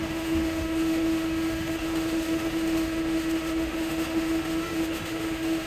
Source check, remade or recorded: remade